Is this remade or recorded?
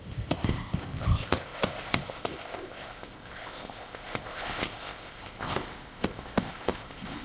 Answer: remade